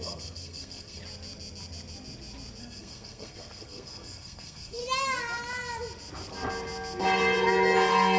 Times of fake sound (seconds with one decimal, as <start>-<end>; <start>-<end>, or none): 0.0-1.0; 2.6-4.8